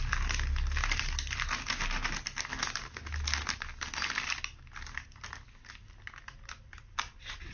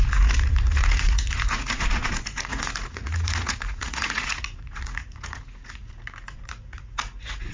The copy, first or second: second